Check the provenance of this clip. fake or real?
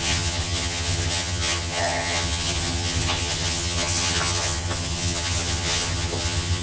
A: fake